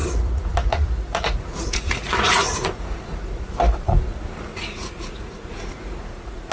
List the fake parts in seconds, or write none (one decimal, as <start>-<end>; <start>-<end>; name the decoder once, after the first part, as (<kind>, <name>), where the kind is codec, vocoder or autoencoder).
0.0-3.4 (vocoder, Vocos); 4.5-6.5